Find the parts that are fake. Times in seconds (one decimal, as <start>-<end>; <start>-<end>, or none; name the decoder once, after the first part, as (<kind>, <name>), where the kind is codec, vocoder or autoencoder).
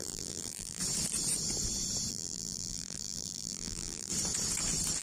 0.0-0.8 (vocoder, BigVGAN v2); 2.1-4.1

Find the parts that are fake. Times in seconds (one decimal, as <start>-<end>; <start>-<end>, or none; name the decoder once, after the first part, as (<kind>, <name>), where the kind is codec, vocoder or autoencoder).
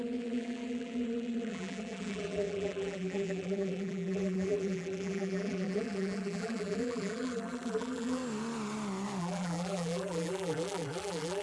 0.0-8.2 (vocoder, BigVGAN v2); 9.2-11.4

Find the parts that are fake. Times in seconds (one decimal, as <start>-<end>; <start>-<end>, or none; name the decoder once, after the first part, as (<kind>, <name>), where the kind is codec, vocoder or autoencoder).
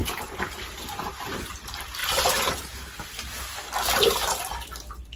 0.0-1.4 (vocoder, BigVGAN v2); 2.0-2.5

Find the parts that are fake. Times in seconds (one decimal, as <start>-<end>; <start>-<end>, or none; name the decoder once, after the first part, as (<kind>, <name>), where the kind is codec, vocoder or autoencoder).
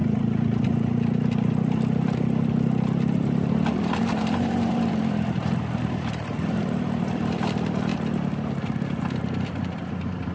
3.7-7.9 (vocoder, BigVGAN v2); 9.0-10.3